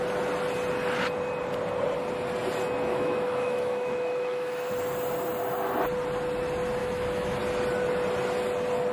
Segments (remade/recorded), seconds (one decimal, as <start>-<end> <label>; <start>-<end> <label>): 0.0-2.9 recorded; 2.9-4.7 remade; 4.7-6.8 recorded; 6.8-7.4 remade; 7.4-8.9 recorded